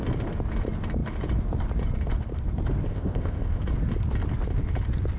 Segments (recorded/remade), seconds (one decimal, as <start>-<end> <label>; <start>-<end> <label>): 0.0-2.9 recorded; 2.9-3.6 remade; 3.6-5.2 recorded